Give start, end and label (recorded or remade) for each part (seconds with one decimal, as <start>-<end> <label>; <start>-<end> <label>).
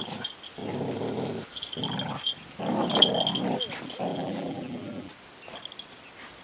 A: 0.0-4.1 recorded; 4.1-5.1 remade; 5.1-6.4 recorded